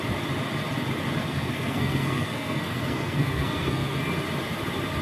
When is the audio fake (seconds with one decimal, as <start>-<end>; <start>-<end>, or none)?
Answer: 1.2-4.0